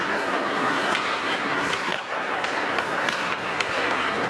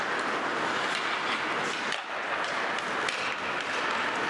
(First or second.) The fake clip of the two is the first